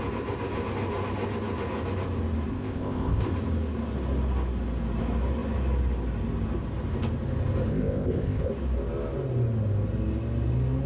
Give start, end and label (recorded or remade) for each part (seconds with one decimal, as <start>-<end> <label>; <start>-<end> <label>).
0.0-2.5 recorded; 2.5-3.3 remade; 3.3-7.7 recorded; 7.7-8.5 remade; 8.5-10.9 recorded